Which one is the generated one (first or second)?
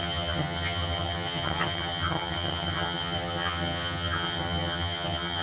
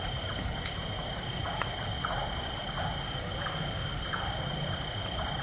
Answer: first